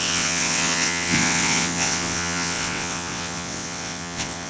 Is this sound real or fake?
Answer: fake